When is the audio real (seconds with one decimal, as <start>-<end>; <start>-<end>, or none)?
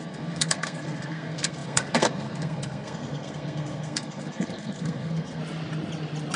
5.4-6.4